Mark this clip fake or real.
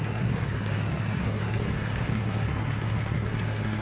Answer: fake